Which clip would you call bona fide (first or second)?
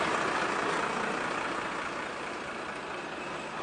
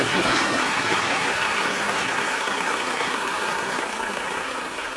first